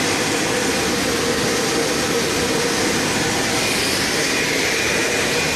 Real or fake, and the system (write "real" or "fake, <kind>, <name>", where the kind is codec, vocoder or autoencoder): real